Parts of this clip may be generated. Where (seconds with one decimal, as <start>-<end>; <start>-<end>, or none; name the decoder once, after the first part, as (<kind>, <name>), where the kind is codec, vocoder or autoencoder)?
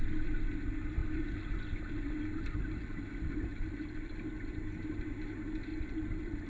1.0-3.0 (vocoder, BigVGAN v2); 3.5-4.1; 5.7-6.5